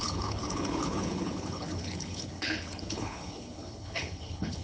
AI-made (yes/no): yes